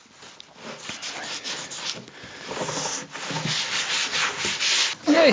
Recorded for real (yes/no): yes